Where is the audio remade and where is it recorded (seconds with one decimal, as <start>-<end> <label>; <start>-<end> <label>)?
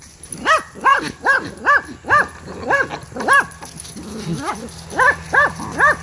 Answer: 0.0-6.0 recorded